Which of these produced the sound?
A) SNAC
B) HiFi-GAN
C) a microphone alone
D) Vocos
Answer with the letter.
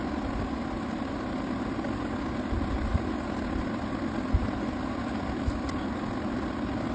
C